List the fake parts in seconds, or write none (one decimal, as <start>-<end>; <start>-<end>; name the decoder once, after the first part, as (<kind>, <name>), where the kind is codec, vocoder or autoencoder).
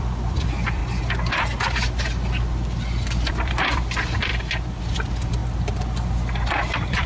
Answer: 0.0-0.8 (vocoder, BigVGAN v2); 3.3-4.3; 4.8-5.4; 6.5-7.1